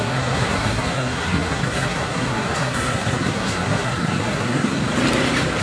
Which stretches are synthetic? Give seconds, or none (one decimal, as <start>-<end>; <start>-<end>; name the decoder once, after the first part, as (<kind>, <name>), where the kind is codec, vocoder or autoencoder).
0.0-4.8 (codec, SNAC)